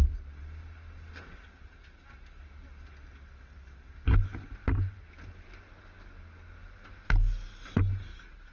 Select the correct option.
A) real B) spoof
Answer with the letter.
A